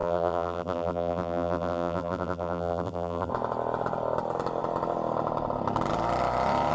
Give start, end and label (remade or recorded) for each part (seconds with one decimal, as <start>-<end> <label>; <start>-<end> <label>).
0.0-3.3 remade; 3.3-6.7 recorded